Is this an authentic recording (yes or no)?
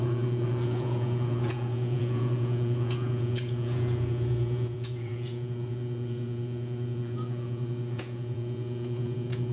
no